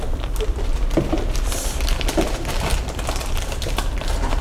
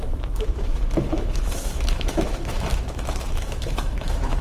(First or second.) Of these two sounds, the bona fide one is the first